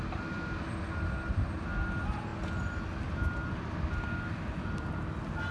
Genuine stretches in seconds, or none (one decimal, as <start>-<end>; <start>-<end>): 0.0-5.5